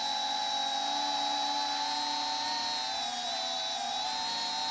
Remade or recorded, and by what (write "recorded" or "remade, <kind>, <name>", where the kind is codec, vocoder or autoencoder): recorded